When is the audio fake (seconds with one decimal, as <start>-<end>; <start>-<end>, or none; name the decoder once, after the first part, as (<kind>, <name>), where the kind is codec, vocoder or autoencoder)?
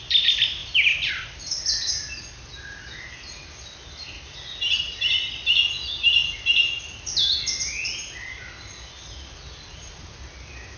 0.6-1.1 (vocoder, BigVGAN v2)